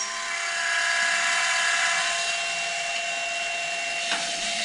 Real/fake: real